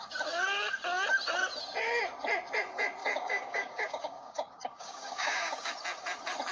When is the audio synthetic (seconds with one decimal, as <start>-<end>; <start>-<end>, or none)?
3.0-5.7